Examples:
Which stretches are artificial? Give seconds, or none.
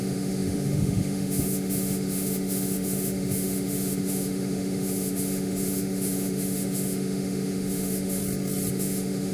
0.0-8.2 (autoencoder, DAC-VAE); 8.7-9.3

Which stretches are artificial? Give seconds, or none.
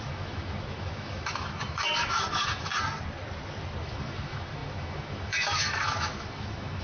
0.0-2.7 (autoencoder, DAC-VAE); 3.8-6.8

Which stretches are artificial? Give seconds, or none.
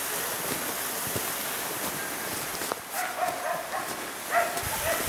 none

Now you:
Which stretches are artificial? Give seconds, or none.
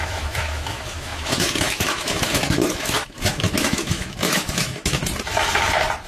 0.0-5.0 (autoencoder, DAC-VAE)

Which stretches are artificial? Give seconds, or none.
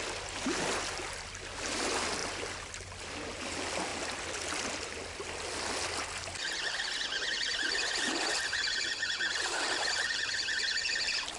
none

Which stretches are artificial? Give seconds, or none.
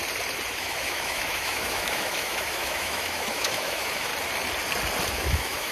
0.5-4.1 (autoencoder, DAC-VAE); 5.1-5.7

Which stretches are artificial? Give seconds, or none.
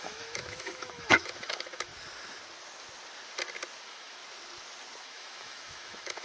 0.0-1.9 (autoencoder, DAC-VAE); 3.8-4.2; 5.0-6.2